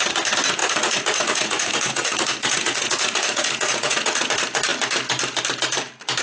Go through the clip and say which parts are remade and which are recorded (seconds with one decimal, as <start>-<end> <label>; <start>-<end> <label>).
0.0-0.6 recorded; 0.6-4.3 remade; 4.3-6.2 recorded